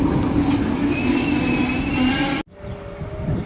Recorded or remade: recorded